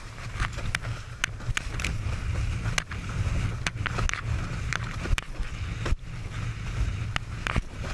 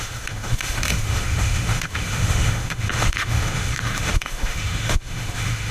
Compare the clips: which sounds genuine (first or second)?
first